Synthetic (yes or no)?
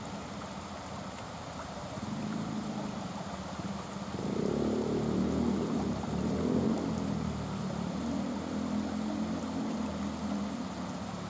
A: no